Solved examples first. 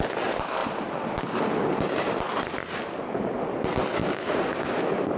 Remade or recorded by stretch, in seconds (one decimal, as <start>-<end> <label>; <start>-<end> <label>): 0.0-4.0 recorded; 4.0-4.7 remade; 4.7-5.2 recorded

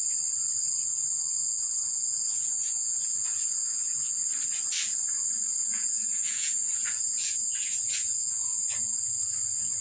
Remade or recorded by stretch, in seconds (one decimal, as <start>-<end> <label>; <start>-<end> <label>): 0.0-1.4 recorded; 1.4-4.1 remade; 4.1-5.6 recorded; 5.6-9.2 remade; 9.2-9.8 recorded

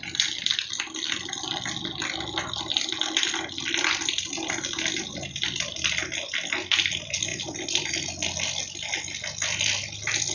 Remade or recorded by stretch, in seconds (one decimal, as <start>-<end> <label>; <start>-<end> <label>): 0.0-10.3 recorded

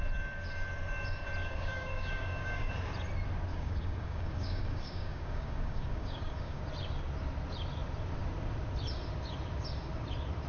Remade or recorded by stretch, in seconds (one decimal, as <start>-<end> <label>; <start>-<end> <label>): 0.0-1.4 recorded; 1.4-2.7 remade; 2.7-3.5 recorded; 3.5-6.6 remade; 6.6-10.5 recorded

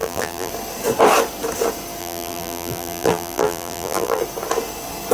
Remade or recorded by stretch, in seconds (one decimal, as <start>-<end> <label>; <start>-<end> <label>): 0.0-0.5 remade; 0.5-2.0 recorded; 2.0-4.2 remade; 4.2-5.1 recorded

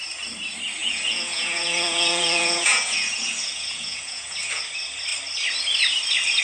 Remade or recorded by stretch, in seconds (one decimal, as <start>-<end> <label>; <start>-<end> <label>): 0.0-0.8 recorded; 0.8-4.6 remade; 4.6-6.4 recorded